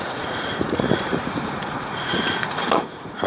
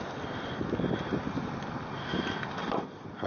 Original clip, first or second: second